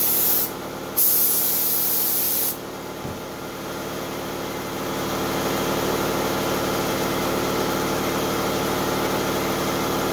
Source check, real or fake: real